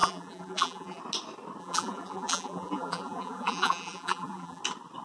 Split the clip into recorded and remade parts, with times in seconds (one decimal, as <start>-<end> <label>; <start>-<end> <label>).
0.0-1.0 remade; 1.0-1.6 recorded; 1.6-4.6 remade; 4.6-5.0 recorded